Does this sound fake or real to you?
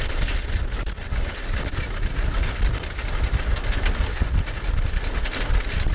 real